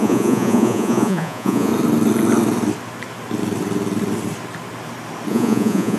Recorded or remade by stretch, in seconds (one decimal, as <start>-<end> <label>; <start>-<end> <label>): 0.0-1.7 remade; 1.7-5.3 recorded; 5.3-6.0 remade